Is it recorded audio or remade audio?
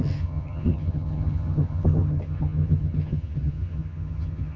remade